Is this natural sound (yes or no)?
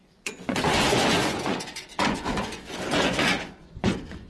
no